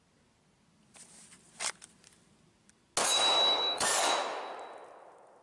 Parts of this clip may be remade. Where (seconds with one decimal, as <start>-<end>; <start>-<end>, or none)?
3.0-4.1